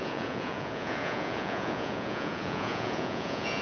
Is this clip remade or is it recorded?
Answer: remade